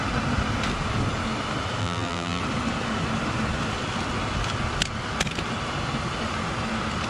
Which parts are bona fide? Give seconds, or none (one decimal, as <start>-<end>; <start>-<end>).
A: 0.0-1.8; 2.4-7.1